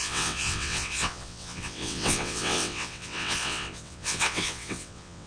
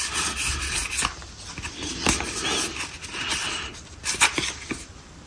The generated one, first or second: first